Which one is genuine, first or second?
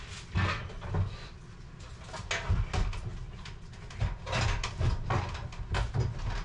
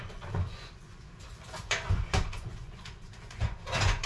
first